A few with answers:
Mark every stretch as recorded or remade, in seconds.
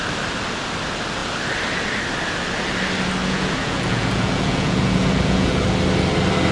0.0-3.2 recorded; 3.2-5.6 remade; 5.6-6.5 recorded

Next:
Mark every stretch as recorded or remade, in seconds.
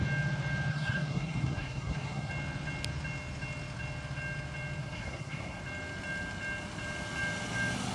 0.0-0.7 recorded; 0.7-2.3 remade; 2.3-4.8 recorded; 4.8-5.6 remade; 5.6-7.9 recorded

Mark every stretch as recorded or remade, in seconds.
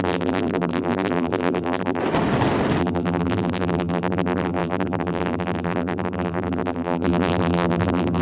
0.0-2.0 remade; 2.0-2.8 recorded; 2.8-8.2 remade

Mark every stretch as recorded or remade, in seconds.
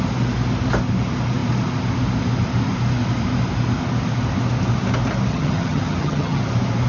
0.0-5.3 recorded; 5.3-6.4 remade; 6.4-6.9 recorded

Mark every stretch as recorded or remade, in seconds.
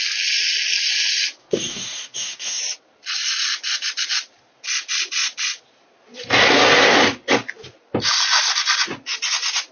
0.0-1.4 recorded; 1.4-2.6 remade; 2.6-9.7 recorded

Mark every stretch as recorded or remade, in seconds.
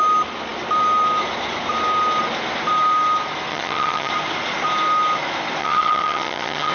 0.0-3.5 recorded; 3.5-4.1 remade; 4.1-5.6 recorded; 5.6-6.7 remade